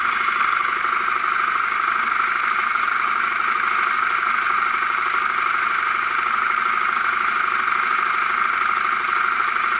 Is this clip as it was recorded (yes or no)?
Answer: yes